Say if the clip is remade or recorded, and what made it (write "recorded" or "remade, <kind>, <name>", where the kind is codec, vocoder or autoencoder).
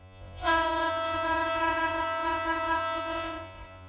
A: remade, vocoder, Vocos